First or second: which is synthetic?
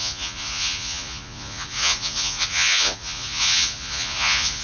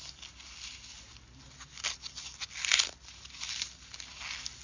first